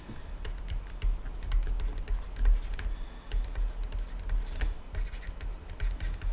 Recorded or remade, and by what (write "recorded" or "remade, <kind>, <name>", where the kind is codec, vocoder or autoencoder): recorded